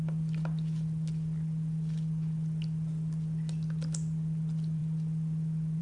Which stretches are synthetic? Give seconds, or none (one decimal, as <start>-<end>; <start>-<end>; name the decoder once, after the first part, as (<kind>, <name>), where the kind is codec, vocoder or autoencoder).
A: none